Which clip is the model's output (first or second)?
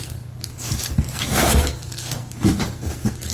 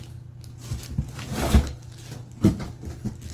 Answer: first